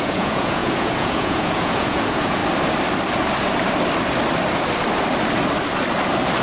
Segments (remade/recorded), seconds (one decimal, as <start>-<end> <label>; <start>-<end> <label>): 0.0-2.4 remade; 2.4-6.4 recorded